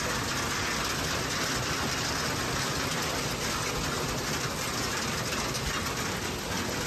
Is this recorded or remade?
recorded